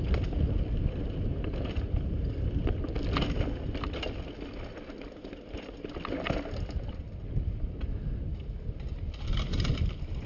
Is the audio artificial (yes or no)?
no